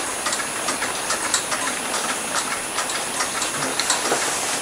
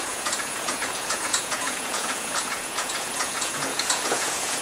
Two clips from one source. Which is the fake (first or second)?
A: second